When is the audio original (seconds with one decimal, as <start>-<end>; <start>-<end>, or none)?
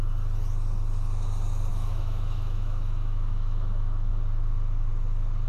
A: 0.0-1.7; 4.1-5.5